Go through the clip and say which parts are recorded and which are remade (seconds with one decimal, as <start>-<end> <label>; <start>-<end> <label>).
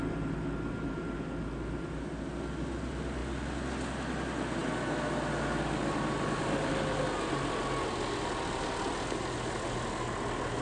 0.0-10.6 recorded